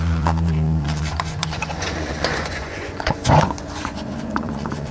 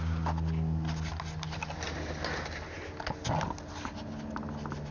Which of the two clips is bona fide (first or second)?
second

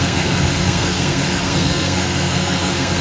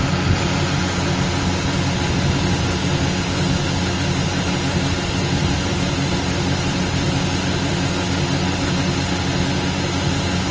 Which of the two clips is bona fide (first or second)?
second